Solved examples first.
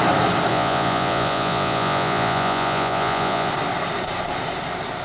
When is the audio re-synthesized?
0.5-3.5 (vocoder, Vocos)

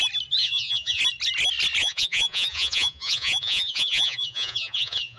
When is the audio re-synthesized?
0.4-1.0 (vocoder, Vocos); 1.8-5.2

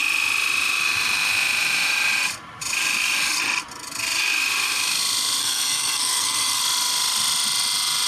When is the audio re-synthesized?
5.4-6.6 (codec, SNAC)

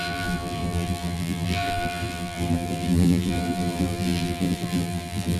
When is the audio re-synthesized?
0.0-5.4 (vocoder, BigVGAN v2)

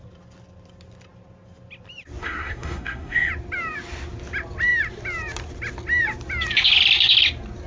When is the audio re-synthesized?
2.2-3.3 (codec, SNAC)